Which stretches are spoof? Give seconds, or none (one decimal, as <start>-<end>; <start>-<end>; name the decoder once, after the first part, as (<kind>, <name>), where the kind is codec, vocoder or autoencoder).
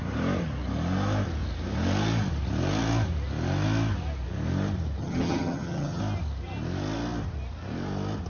5.0-6.0 (vocoder, HiFi-GAN)